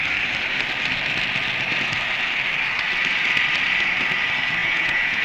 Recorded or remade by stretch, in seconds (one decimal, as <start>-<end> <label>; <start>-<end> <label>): 0.0-4.6 recorded; 4.6-5.2 remade